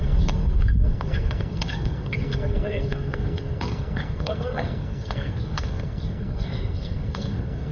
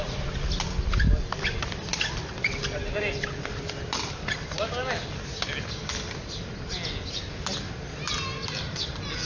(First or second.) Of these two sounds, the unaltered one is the second